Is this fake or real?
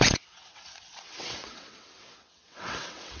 fake